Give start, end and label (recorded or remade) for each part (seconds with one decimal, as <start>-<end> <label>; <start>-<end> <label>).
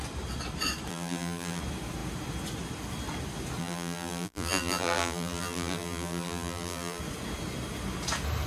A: 0.0-0.9 recorded; 0.9-1.6 remade; 1.6-3.6 recorded; 3.6-7.0 remade; 7.0-8.5 recorded